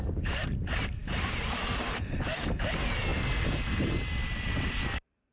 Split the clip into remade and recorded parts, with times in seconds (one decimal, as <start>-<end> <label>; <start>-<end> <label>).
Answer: 0.0-1.0 recorded; 1.0-2.2 remade; 2.2-3.1 recorded; 3.1-5.3 remade